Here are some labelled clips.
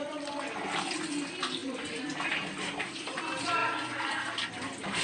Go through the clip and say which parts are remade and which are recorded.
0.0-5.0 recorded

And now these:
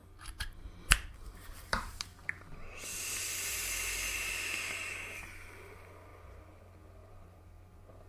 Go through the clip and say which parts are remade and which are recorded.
0.0-2.5 remade; 2.5-7.0 recorded; 7.0-8.1 remade

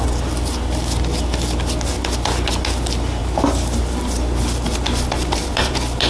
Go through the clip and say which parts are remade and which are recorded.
0.0-3.2 recorded; 3.2-6.1 remade